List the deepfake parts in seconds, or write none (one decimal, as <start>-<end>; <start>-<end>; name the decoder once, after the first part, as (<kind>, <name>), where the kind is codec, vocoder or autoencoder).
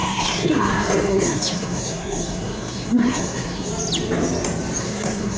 0.0-3.7 (codec, SNAC); 4.8-5.4